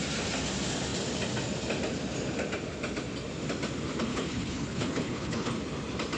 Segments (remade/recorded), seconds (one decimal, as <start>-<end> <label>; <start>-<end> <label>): 0.0-4.1 recorded; 4.1-5.5 remade; 5.5-6.2 recorded